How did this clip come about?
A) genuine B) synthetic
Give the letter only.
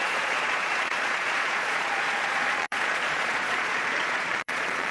B